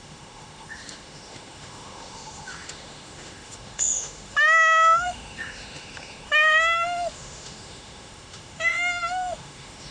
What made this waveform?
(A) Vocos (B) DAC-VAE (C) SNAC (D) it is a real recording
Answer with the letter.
B